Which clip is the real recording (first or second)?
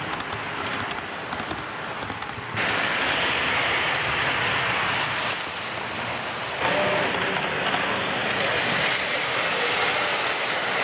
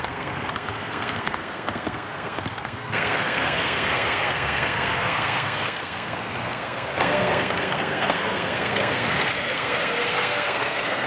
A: first